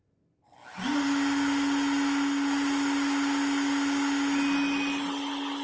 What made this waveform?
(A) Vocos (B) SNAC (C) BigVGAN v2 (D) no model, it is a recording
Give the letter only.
D